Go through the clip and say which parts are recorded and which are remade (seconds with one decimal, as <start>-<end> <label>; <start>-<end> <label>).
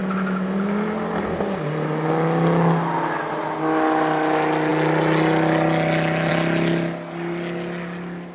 0.0-8.3 recorded